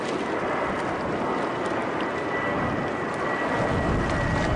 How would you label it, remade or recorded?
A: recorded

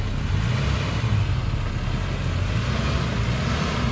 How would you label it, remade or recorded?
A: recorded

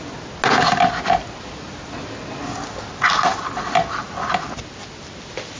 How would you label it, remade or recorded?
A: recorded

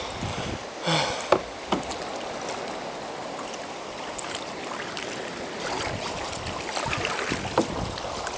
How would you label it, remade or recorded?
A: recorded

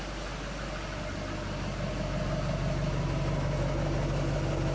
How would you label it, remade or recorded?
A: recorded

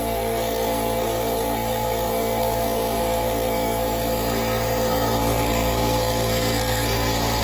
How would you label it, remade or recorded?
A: remade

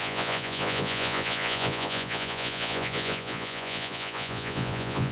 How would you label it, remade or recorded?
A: remade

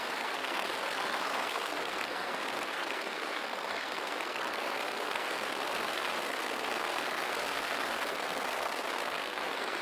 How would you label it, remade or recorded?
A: remade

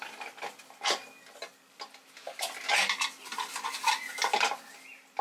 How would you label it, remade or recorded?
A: recorded